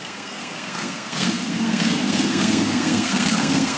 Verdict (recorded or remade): remade